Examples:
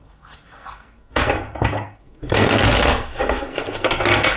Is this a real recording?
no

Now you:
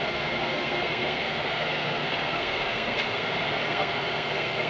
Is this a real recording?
no